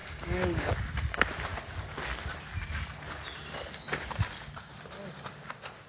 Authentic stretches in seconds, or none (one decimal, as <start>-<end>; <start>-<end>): 0.7-5.9